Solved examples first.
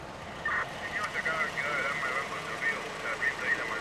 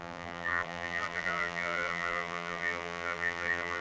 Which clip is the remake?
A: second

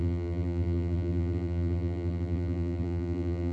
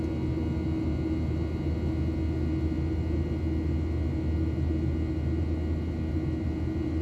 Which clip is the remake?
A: first